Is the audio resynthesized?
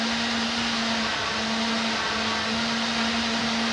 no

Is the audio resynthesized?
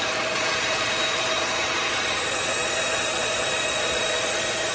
yes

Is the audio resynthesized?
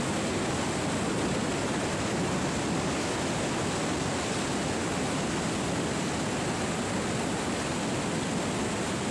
no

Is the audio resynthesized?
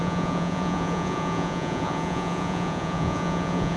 yes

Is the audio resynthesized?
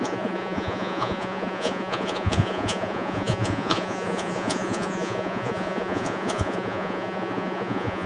yes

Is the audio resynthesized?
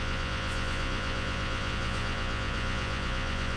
yes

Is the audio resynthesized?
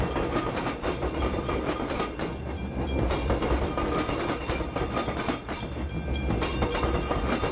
no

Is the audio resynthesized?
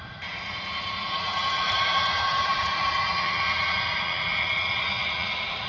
yes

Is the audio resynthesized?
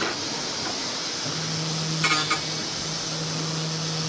no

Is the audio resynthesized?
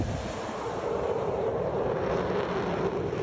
no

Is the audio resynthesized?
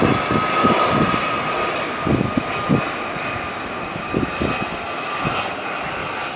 no